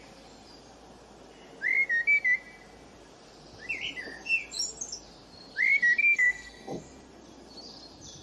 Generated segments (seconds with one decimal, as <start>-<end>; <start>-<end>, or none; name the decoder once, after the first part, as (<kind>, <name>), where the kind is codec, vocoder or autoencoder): 6.0-6.8 (codec, SNAC)